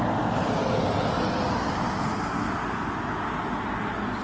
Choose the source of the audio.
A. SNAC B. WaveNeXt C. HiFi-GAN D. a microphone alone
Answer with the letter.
D